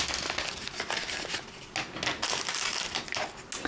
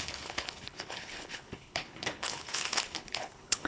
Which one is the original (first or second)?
first